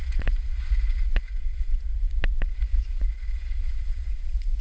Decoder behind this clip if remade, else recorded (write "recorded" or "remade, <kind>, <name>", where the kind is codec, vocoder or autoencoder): remade, vocoder, Vocos